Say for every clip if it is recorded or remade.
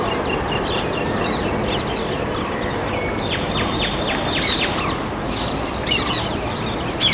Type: recorded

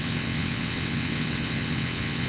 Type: remade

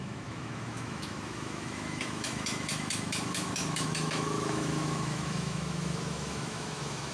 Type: remade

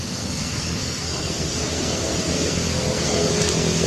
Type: remade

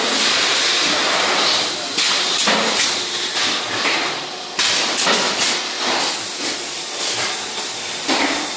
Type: remade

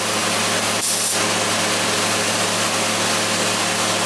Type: recorded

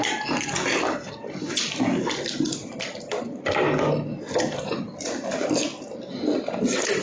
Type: recorded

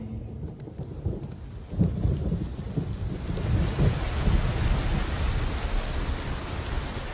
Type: recorded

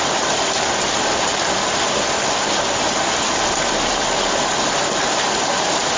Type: recorded